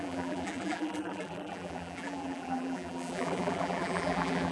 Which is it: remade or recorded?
remade